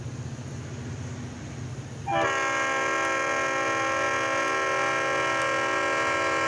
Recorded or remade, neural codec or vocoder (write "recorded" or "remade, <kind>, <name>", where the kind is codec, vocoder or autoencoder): recorded